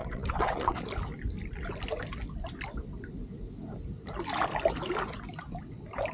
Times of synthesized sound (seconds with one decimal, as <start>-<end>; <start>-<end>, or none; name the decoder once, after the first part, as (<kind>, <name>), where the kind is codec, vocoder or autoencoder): 0.0-0.8 (vocoder, WaveNeXt)